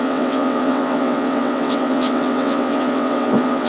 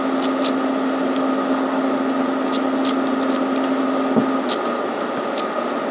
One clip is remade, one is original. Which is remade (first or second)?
first